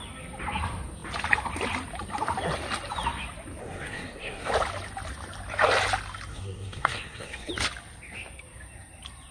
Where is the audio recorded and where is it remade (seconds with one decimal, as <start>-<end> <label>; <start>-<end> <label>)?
0.0-3.6 recorded; 3.6-4.5 remade; 4.5-6.3 recorded; 6.3-7.5 remade; 7.5-9.3 recorded